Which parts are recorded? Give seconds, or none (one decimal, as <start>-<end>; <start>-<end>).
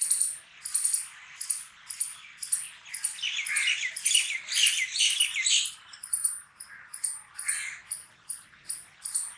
0.0-9.4